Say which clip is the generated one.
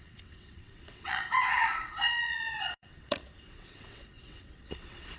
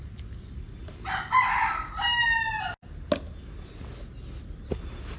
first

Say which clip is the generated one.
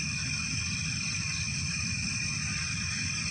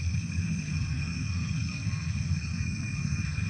second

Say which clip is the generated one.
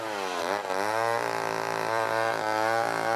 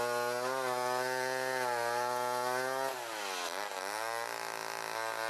first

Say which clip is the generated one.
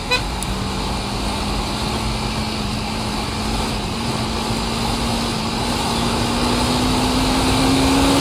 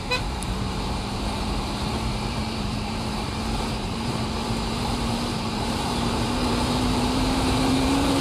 second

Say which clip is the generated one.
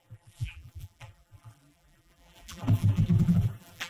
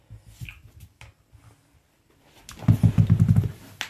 first